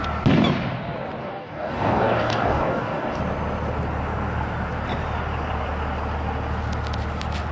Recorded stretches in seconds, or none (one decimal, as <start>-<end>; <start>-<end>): 0.0-1.2; 3.2-7.5